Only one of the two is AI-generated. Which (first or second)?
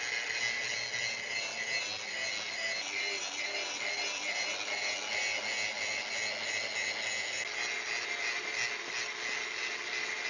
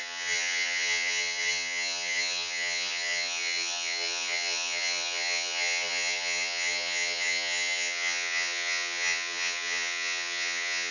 second